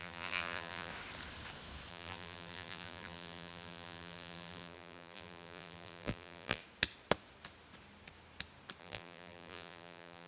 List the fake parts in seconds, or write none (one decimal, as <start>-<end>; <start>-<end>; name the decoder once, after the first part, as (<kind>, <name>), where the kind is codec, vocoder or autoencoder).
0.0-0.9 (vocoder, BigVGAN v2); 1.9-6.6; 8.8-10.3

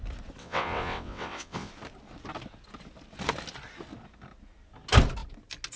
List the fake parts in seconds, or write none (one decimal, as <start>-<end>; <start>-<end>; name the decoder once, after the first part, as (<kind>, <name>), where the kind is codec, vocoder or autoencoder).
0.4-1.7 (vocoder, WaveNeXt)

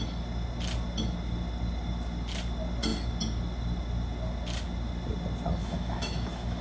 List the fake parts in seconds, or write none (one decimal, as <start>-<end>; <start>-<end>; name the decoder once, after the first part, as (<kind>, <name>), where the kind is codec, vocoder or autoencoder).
5.6-6.6 (autoencoder, DAC-VAE)

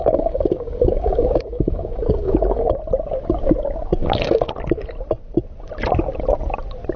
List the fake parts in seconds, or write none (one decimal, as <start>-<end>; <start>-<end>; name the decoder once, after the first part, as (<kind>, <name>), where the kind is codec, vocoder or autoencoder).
0.0-2.8 (codec, DAC); 4.0-4.5

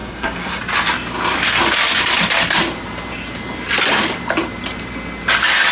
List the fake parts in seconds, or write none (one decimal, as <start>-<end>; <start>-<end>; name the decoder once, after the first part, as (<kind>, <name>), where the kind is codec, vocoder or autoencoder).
0.0-0.6 (codec, SNAC)